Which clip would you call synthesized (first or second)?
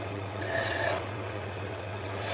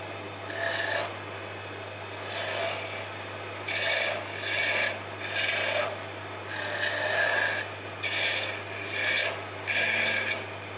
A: first